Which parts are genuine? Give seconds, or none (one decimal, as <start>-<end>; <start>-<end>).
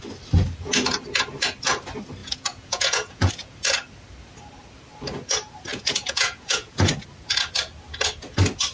0.0-2.2; 3.3-5.7; 6.9-8.7